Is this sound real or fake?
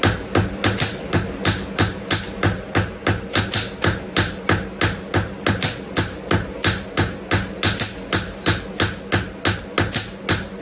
real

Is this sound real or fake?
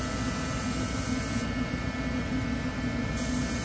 real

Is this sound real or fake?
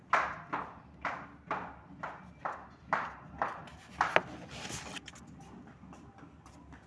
real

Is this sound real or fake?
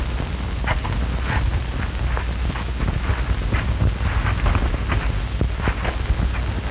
real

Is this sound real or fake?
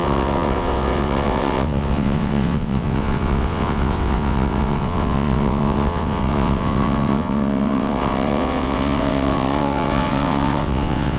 fake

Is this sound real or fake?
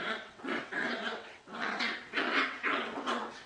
fake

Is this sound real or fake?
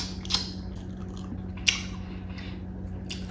real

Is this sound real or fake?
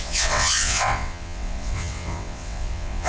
fake